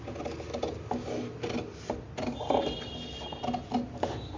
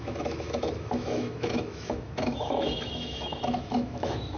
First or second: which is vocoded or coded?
second